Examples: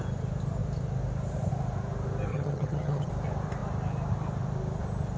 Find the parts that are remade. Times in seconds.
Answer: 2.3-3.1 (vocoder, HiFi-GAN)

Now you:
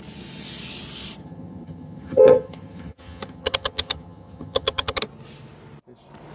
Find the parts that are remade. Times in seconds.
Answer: 1.2-5.0 (vocoder, HiFi-GAN)

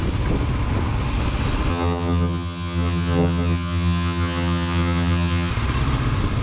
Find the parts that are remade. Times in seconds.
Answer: 1.7-5.5 (vocoder, HiFi-GAN)

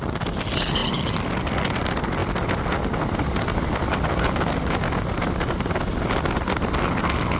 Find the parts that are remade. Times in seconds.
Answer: none